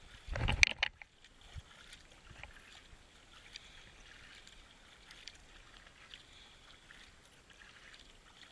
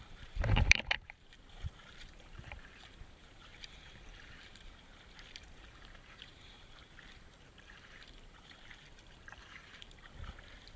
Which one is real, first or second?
first